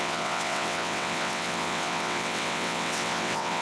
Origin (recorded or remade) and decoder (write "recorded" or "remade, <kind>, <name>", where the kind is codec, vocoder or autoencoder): remade, vocoder, WaveNeXt